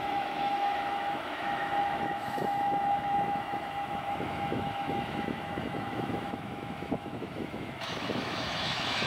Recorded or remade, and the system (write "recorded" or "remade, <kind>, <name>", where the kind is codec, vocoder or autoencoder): remade, autoencoder, DAC-VAE